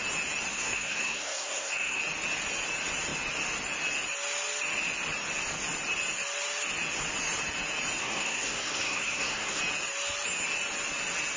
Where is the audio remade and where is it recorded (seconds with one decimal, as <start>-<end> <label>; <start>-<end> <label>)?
0.0-0.5 recorded; 0.5-2.0 remade; 2.0-8.0 recorded; 8.0-9.6 remade; 9.6-11.4 recorded